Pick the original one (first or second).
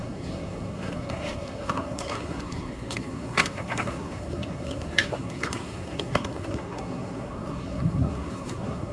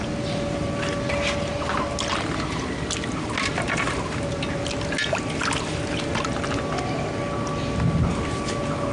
second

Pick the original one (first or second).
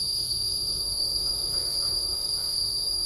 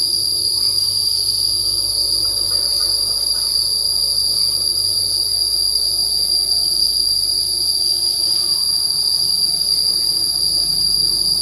second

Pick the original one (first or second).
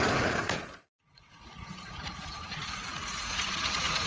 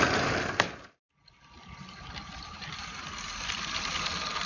second